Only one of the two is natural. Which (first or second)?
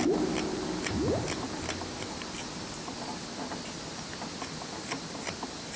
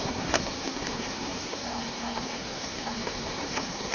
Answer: first